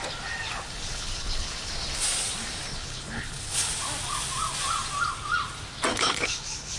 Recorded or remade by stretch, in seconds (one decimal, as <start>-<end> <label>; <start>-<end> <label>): 0.0-0.5 recorded; 0.5-1.7 remade; 1.7-2.7 recorded; 2.7-3.7 remade; 3.7-5.9 recorded; 5.9-6.8 remade